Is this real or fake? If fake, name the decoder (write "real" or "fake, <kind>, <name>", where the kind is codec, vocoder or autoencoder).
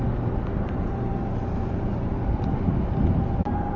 real